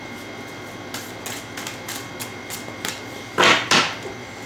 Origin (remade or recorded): recorded